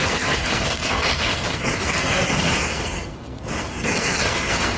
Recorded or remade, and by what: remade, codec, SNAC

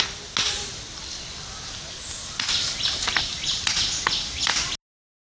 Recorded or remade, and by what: recorded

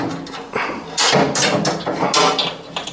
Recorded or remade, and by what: recorded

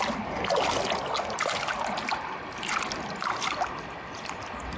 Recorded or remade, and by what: recorded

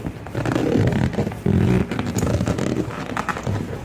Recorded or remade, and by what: recorded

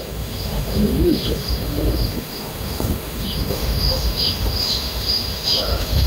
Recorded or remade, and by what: remade, autoencoder, DAC-VAE